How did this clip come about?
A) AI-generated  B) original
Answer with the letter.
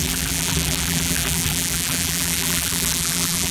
A